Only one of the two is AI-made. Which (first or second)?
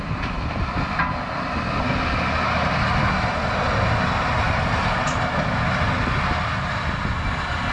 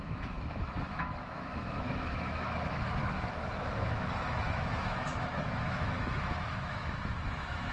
second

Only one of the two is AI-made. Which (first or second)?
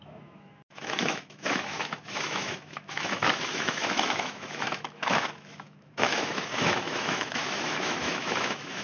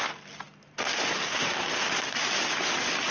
first